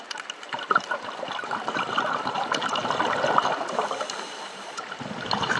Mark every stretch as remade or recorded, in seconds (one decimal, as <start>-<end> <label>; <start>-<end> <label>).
0.0-2.8 remade; 2.8-3.7 recorded; 3.7-5.6 remade